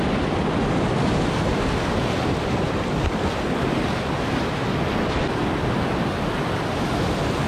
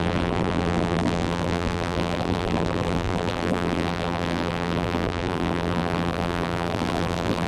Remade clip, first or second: second